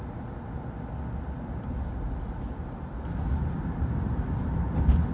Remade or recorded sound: recorded